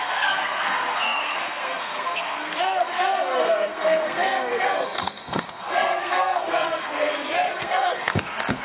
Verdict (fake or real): fake